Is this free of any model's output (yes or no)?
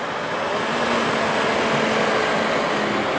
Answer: yes